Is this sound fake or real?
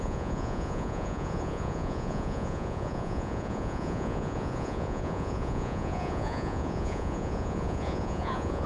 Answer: fake